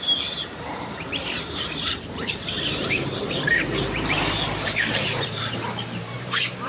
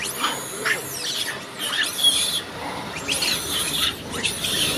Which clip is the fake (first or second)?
first